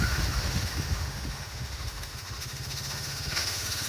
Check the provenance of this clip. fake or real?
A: fake